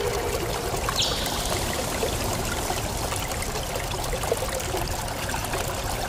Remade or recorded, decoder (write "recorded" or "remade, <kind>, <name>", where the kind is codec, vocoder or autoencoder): recorded